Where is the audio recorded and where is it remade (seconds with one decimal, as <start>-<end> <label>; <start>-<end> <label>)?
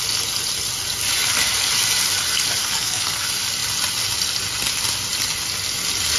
0.0-2.6 recorded; 2.6-3.2 remade; 3.2-6.2 recorded